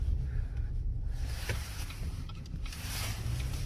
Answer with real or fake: real